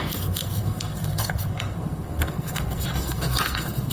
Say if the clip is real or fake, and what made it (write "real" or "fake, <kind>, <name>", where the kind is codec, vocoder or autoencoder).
fake, codec, SNAC